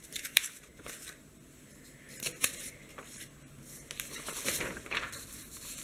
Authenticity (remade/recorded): remade